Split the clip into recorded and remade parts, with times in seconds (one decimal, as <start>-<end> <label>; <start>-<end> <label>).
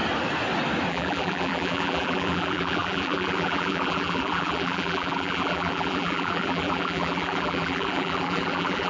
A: 0.0-0.9 recorded; 0.9-8.9 remade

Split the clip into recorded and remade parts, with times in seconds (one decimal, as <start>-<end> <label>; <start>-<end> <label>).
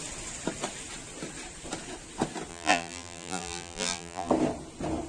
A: 0.0-2.5 recorded; 2.5-4.3 remade; 4.3-5.1 recorded